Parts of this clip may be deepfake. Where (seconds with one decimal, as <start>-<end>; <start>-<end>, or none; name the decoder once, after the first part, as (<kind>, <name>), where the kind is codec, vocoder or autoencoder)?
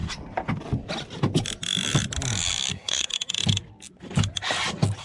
2.7-3.1 (codec, SNAC)